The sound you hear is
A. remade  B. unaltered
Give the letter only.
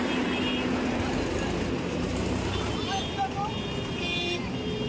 B